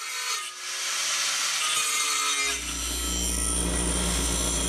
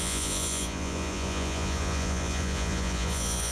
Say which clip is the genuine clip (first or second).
first